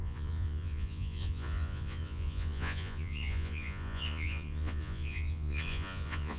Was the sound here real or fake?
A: fake